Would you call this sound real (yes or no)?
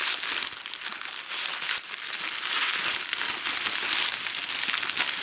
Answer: yes